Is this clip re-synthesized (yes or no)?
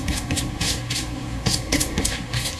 yes